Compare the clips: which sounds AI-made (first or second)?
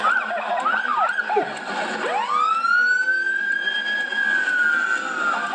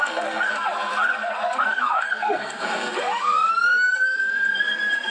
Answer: second